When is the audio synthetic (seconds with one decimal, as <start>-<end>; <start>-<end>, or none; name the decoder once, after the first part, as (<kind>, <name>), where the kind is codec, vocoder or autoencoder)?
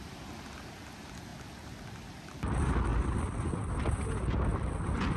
none